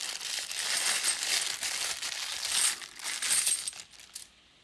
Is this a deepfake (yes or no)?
no